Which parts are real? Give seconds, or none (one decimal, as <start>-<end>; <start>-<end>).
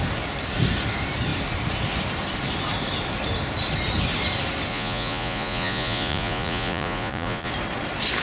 0.0-4.7; 7.5-8.2